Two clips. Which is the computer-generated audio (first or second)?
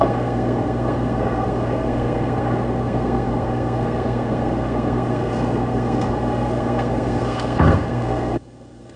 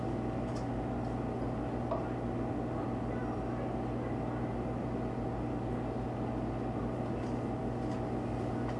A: first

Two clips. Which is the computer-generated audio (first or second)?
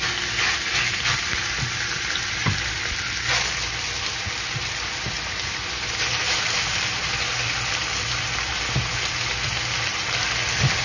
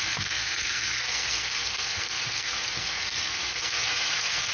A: second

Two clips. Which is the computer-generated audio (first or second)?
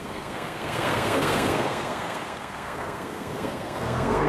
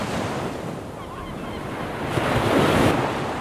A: first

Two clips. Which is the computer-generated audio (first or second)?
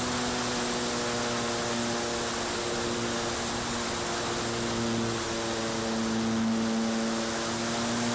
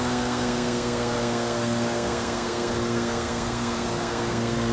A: second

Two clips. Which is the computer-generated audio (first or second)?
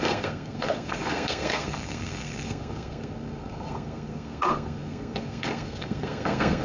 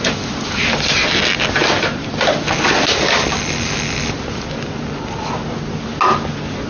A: first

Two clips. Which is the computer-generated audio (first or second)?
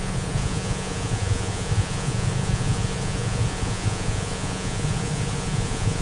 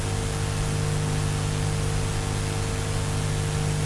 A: first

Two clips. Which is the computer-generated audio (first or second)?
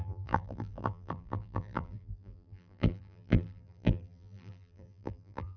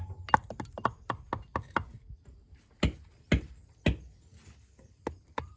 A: first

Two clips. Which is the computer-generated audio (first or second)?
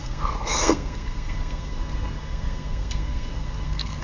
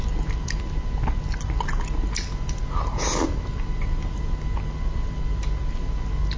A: first